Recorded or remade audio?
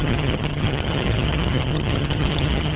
remade